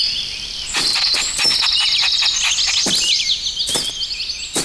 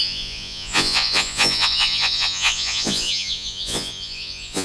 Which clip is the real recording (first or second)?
first